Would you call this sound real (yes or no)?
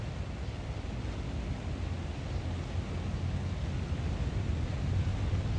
yes